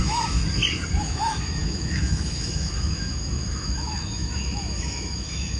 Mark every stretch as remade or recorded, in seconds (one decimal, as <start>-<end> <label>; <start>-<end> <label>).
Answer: 0.0-0.4 remade; 0.4-1.0 recorded; 1.0-5.6 remade